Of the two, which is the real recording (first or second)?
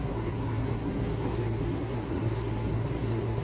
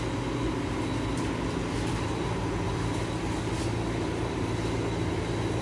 second